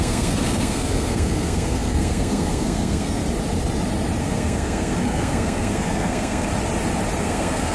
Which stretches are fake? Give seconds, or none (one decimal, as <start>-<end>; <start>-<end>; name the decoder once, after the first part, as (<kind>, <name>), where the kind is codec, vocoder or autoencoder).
0.0-3.2 (codec, SNAC); 4.2-6.5; 7.2-7.7